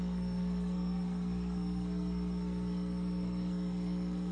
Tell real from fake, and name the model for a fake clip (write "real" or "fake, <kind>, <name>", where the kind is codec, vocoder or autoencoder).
fake, codec, SNAC